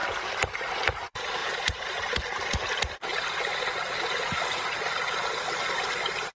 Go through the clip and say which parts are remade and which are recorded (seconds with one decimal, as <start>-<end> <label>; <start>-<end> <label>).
0.0-6.3 recorded